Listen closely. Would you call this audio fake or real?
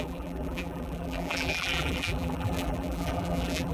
fake